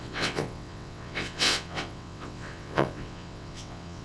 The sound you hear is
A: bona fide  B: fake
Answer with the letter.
B